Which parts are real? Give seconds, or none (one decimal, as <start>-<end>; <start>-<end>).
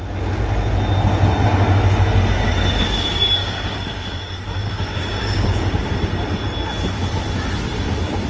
0.0-2.8; 5.8-8.3